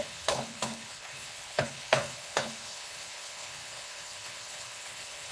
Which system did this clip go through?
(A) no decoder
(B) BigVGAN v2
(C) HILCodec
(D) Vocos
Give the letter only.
C